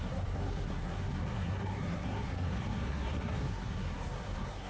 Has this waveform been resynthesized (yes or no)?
yes